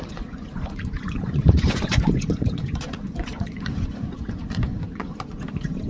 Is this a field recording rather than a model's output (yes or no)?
no